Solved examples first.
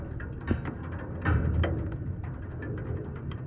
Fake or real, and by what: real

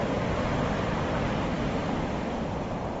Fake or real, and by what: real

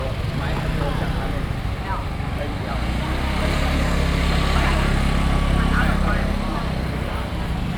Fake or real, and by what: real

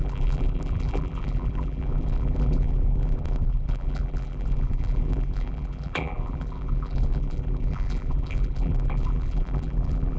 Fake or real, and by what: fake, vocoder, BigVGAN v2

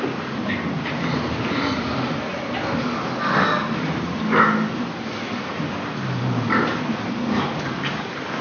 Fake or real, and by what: real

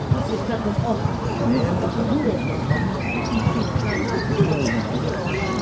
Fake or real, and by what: real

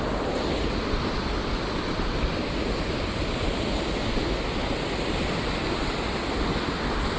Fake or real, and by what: real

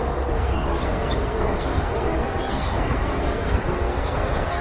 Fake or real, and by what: fake, codec, SNAC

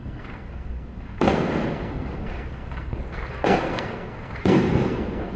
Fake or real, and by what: fake, codec, SNAC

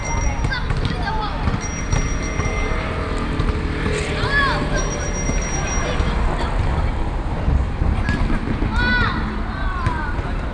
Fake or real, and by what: real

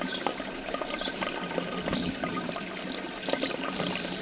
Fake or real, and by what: real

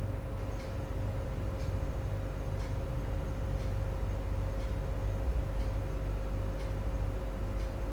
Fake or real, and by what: real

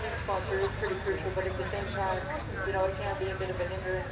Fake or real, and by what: real